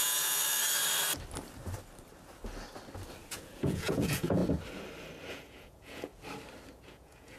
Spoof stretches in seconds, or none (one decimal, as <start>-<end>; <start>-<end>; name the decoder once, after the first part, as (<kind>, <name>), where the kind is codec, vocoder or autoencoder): 0.0-0.4 (vocoder, Vocos); 3.3-4.4; 5.3-6.1; 6.7-7.4